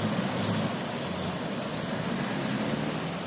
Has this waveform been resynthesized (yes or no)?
no